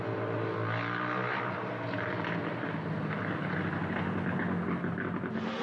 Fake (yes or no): no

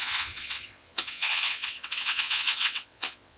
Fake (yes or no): yes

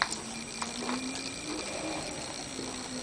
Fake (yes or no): no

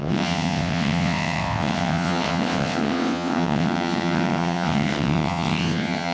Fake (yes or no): yes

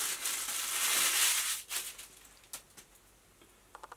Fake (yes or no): no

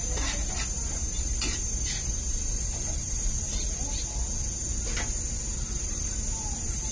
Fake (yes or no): no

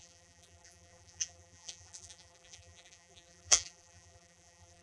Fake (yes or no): yes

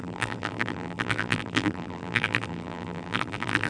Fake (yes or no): yes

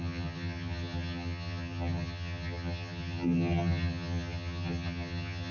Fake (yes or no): yes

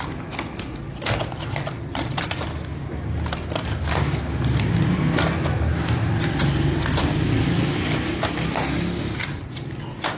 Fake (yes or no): no